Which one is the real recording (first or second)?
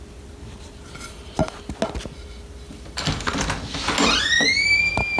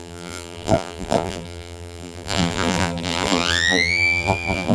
first